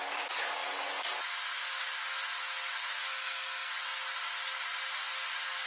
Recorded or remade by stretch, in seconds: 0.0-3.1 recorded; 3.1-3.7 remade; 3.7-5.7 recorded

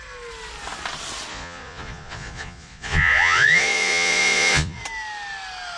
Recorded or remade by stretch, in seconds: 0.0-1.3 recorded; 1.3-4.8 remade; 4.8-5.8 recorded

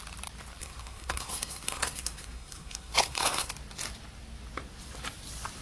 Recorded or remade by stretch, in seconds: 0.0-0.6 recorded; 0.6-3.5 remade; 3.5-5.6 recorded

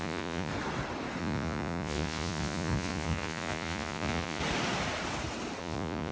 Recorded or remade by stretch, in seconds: 0.0-0.5 remade; 0.5-1.2 recorded; 1.2-4.4 remade; 4.4-5.6 recorded; 5.6-6.1 remade

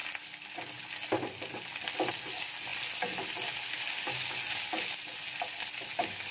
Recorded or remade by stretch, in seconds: 0.0-6.3 recorded

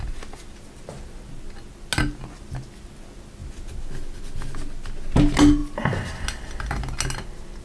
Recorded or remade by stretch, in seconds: 0.0-7.6 recorded